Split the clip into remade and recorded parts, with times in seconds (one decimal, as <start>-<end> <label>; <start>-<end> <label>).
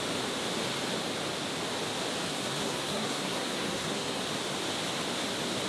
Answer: 0.0-2.3 recorded; 2.3-4.2 remade; 4.2-5.7 recorded